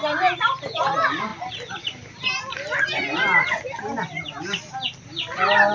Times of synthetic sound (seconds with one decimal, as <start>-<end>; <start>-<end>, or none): none

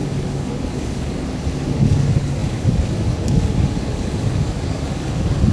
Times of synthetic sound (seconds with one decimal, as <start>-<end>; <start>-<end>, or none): 0.0-5.5

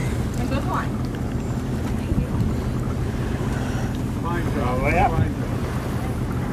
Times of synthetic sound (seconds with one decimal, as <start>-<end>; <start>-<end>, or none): none

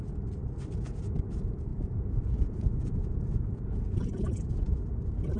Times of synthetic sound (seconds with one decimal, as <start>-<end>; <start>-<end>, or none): 1.7-4.5